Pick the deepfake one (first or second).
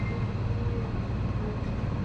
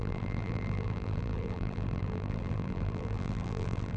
second